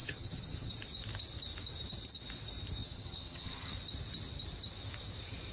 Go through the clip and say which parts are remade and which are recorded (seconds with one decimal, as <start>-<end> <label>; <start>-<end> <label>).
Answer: 0.0-0.7 remade; 0.7-2.8 recorded; 2.8-3.7 remade; 3.7-5.5 recorded